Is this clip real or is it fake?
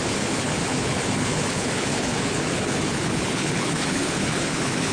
fake